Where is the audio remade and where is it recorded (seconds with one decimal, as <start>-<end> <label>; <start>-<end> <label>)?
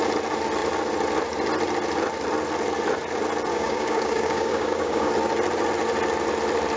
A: 0.0-3.5 recorded; 3.5-5.1 remade; 5.1-6.8 recorded